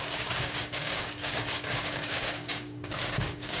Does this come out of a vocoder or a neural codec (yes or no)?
yes